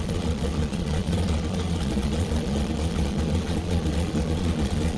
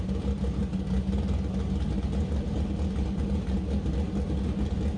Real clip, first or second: second